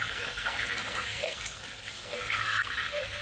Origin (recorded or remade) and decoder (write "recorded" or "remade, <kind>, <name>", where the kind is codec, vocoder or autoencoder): remade, codec, SNAC